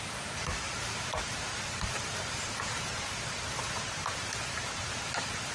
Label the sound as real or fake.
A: fake